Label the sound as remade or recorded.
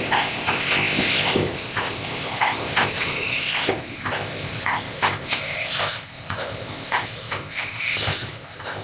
remade